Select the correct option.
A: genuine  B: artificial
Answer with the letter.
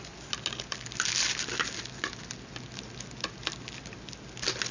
A